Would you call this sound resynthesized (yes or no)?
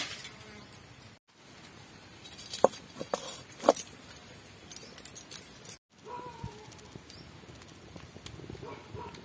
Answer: no